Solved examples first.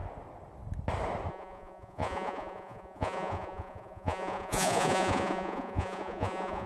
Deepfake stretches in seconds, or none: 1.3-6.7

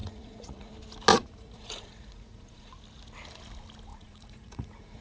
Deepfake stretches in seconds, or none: 0.0-0.7; 1.1-2.7; 3.9-5.0

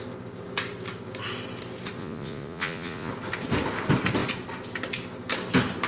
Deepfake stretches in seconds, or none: 2.0-3.1

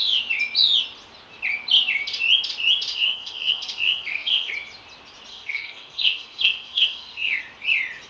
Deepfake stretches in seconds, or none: 2.9-4.5; 5.3-7.4

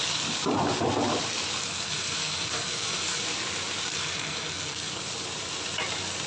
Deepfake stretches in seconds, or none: 1.6-3.2; 3.9-5.0

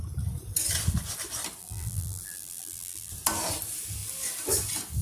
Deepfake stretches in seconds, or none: 1.6-3.1